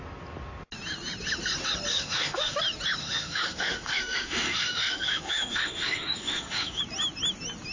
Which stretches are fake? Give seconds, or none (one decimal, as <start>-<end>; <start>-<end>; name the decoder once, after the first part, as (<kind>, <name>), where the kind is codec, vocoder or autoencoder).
1.9-2.6 (autoencoder, DAC-VAE); 3.0-6.8